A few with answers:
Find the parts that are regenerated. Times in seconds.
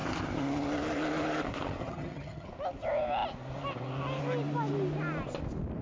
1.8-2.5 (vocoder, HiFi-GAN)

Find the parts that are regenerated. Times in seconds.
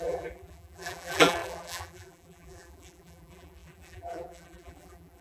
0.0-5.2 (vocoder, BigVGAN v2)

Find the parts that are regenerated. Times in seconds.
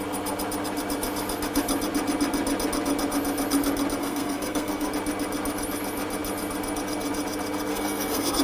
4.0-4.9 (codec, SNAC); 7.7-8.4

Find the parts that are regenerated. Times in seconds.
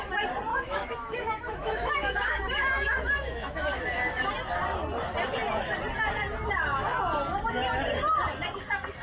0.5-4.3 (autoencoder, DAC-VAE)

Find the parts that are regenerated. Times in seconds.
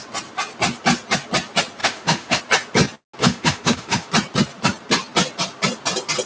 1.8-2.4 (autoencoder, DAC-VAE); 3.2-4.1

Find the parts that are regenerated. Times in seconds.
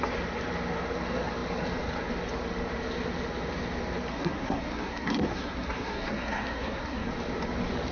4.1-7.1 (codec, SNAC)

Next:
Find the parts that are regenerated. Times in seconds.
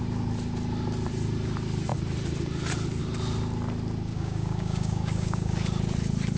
4.1-5.5 (codec, DAC)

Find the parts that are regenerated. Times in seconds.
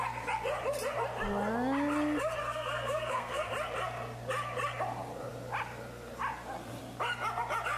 2.4-3.5 (codec, SNAC)